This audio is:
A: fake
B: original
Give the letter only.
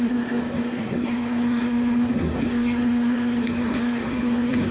A